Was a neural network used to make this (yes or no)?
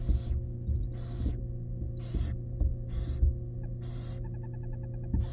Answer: no